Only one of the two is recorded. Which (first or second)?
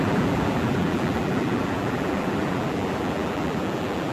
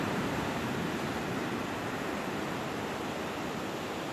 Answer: second